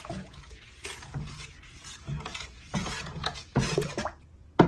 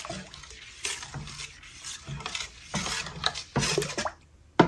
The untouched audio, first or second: second